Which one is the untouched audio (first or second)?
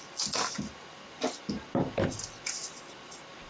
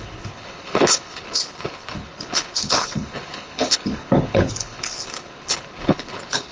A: first